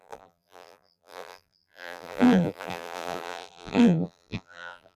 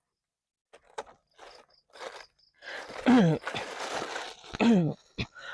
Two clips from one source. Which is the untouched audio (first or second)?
second